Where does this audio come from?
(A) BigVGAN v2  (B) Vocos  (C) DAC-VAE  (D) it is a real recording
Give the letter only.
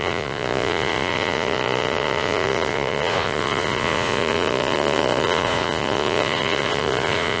B